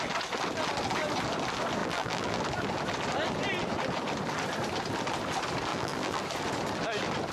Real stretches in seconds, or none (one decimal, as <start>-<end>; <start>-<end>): 0.0-1.8; 2.4-5.7; 6.2-7.3